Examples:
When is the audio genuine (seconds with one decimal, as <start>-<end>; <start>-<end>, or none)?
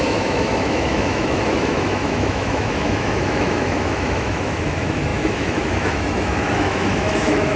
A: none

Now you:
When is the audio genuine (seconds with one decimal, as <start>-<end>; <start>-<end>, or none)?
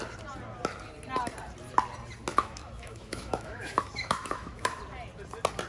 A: 0.0-2.3; 4.8-5.7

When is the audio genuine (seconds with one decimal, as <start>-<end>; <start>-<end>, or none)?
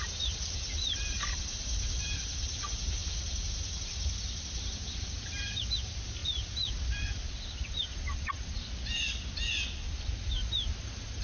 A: 0.0-11.2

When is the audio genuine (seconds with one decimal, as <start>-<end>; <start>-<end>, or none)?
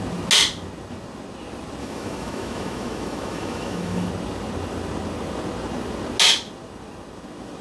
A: 0.0-1.8; 4.1-7.6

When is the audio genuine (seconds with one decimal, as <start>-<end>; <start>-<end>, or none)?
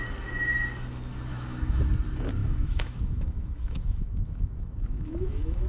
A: 0.0-1.3; 1.8-2.4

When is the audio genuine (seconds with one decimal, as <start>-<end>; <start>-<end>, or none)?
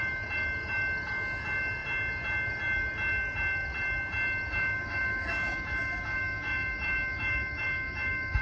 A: 0.0-4.5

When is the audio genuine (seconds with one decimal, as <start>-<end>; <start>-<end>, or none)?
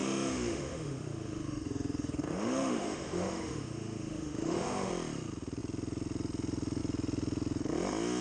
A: 4.9-8.2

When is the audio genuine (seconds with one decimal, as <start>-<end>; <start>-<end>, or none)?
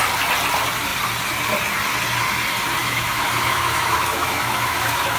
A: 0.0-2.8